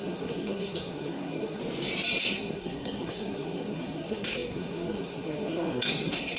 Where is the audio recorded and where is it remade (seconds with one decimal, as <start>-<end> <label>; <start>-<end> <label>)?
0.0-1.6 remade; 1.6-2.2 recorded; 2.2-6.4 remade